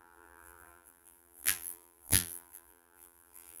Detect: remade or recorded remade